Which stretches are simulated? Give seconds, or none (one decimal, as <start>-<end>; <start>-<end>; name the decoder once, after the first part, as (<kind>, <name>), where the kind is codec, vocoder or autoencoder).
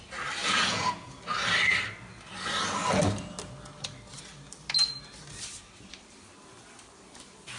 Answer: 0.4-1.2 (vocoder, Vocos)